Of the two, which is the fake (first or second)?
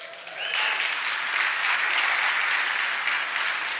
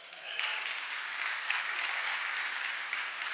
second